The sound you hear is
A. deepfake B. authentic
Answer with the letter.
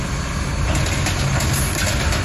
B